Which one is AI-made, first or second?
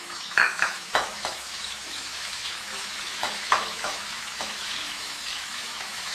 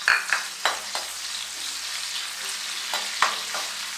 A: first